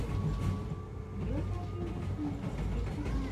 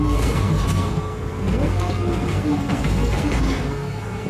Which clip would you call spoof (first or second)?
second